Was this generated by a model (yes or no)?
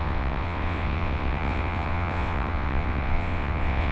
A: yes